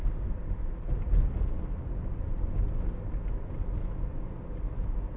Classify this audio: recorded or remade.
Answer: recorded